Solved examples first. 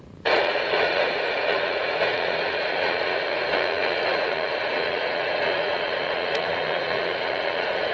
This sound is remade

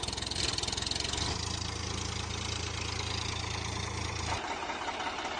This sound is recorded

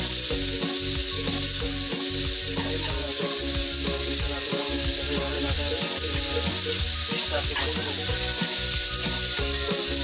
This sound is recorded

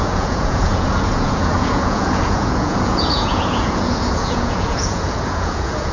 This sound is remade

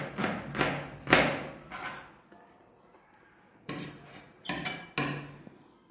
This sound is recorded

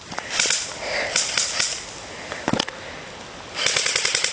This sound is recorded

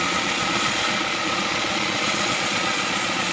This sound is remade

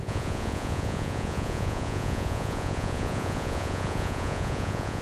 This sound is remade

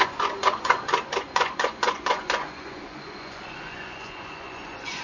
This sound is remade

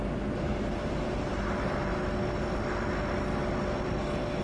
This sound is recorded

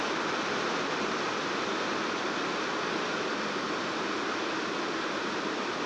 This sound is recorded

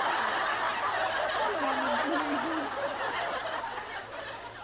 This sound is recorded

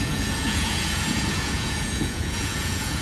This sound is remade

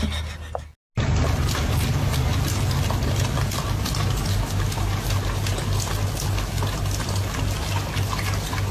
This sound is recorded